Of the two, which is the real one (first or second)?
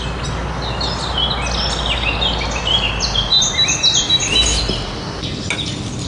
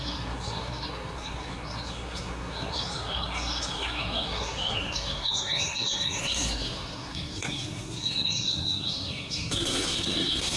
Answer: first